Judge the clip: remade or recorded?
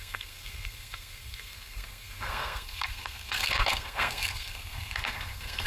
remade